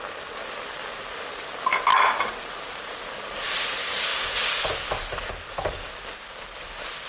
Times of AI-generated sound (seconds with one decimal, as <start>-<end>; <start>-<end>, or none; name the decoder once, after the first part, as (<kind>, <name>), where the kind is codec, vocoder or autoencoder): 1.9-2.4 (vocoder, BigVGAN v2); 4.1-4.7